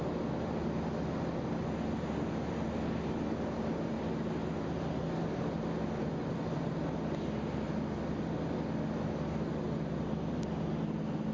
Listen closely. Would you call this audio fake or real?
real